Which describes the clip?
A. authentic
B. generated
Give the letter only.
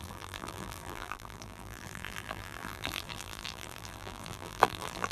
B